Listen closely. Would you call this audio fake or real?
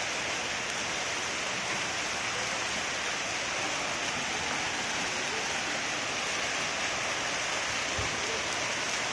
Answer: real